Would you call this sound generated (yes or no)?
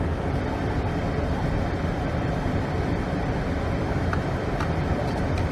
no